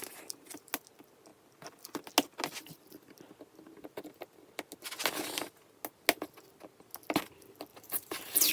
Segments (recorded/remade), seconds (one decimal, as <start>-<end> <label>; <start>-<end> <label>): 0.0-7.7 recorded; 7.7-8.5 remade